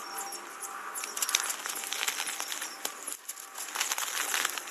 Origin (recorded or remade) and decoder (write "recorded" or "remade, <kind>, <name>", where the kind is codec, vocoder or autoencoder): recorded